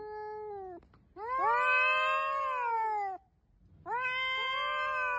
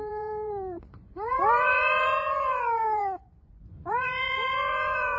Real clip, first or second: first